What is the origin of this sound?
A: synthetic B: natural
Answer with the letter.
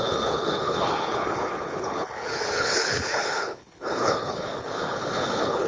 A